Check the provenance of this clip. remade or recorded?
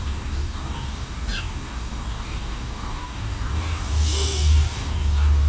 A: remade